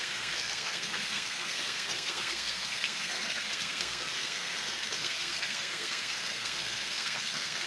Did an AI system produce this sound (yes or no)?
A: yes